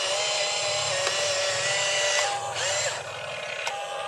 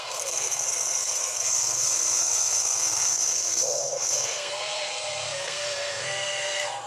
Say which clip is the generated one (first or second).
second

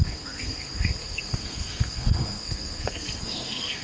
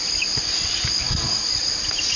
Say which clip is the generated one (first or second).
first